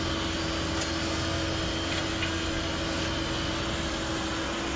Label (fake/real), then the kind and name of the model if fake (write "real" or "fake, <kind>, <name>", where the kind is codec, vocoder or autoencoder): real